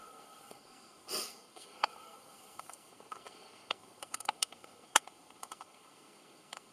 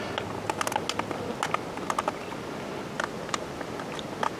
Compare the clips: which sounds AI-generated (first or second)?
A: first